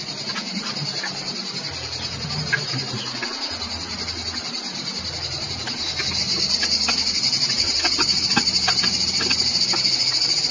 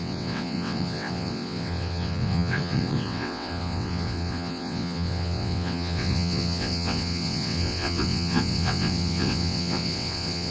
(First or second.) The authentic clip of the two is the first